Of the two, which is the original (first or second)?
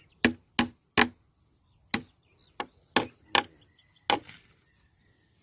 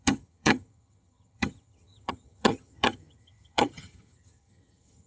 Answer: first